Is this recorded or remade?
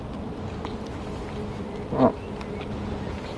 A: recorded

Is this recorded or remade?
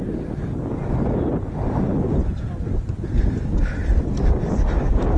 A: recorded